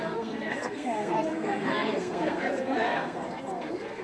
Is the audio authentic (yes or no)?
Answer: no